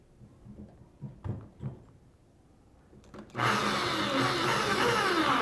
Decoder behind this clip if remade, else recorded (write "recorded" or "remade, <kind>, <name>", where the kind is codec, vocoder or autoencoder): recorded